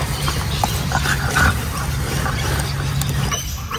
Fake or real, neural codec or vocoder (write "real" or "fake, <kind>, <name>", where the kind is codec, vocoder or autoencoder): real